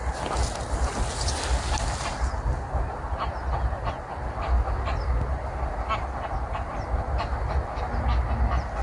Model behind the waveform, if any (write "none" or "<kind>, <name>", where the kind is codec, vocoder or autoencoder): none